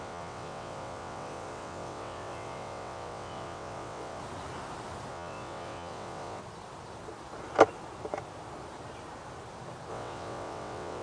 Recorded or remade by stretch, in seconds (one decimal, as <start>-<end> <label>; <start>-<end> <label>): 0.0-4.2 remade; 4.2-5.1 recorded; 5.1-6.4 remade; 6.4-9.9 recorded; 9.9-11.0 remade